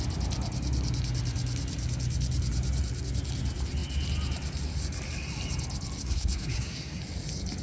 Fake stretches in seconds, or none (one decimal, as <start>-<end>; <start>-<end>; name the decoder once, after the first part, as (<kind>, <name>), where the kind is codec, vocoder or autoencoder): 6.0-7.0 (codec, SNAC)